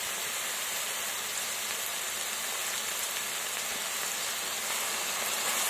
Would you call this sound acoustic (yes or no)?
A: yes